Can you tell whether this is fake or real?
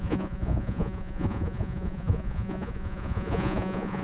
fake